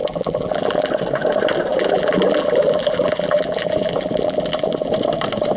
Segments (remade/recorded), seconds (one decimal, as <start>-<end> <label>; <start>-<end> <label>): 0.0-0.9 remade; 0.9-1.7 recorded; 1.7-4.9 remade; 4.9-5.6 recorded